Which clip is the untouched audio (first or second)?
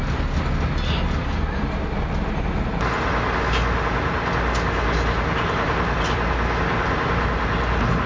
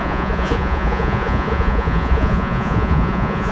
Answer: first